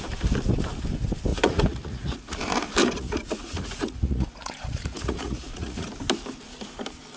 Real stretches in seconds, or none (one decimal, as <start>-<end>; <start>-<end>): 0.0-1.3; 2.4-2.8; 5.9-7.2